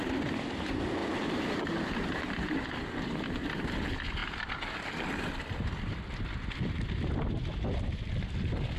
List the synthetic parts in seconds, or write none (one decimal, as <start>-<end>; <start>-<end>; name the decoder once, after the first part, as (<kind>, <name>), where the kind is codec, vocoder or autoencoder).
1.0-2.5 (vocoder, BigVGAN v2)